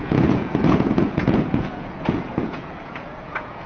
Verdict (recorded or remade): remade